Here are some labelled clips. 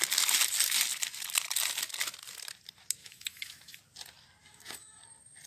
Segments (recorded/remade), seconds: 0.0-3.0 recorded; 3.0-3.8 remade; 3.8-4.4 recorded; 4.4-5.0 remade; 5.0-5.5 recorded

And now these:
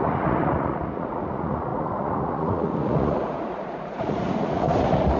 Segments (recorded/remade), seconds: 0.0-5.2 remade

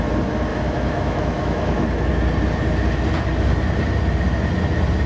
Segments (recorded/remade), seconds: 0.0-0.5 recorded; 0.5-2.1 remade; 2.1-5.1 recorded

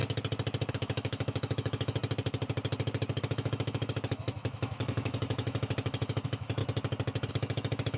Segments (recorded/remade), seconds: 0.0-0.7 recorded; 0.7-2.0 remade; 2.0-3.2 recorded; 3.2-6.6 remade; 6.6-7.3 recorded; 7.3-8.0 remade